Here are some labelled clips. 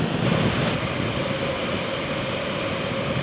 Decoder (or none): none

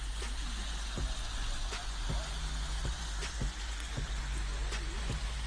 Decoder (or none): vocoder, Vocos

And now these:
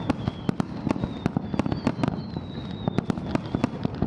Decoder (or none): none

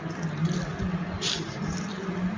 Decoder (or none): none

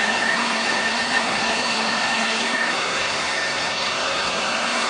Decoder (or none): codec, SNAC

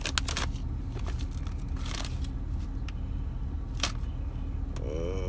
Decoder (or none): none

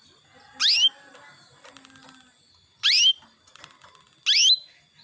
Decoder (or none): none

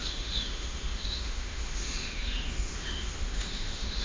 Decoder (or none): autoencoder, DAC-VAE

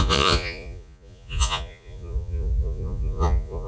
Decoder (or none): vocoder, Vocos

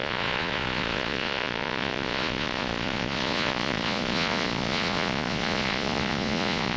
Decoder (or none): vocoder, Vocos